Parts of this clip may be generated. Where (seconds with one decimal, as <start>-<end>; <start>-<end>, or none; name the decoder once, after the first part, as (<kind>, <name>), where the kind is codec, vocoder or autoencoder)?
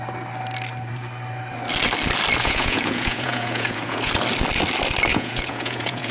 2.4-4.1 (vocoder, Vocos); 5.1-6.1